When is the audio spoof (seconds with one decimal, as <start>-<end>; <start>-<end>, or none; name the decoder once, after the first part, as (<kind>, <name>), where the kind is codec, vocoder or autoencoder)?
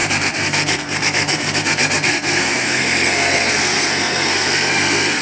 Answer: 0.0-5.2 (codec, SNAC)